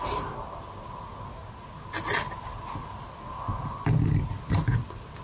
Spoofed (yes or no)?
no